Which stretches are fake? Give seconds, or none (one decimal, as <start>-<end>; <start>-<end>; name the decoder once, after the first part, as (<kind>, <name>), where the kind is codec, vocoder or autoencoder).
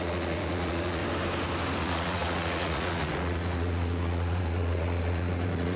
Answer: 0.0-1.0 (vocoder, Vocos); 1.8-5.8